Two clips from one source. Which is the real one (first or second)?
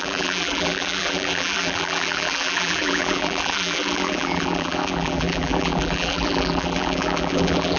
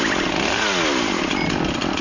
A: second